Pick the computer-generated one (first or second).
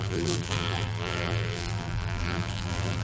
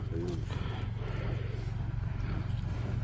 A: first